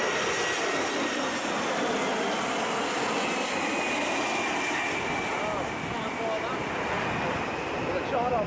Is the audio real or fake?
real